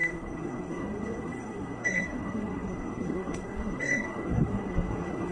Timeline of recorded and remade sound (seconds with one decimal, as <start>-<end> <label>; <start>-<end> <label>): 0.0-5.3 remade